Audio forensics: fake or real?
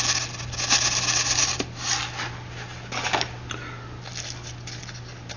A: real